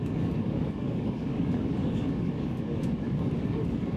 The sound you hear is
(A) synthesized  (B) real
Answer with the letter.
A